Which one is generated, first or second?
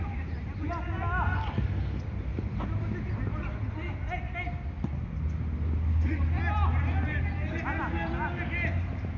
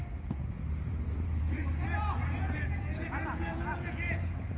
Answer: second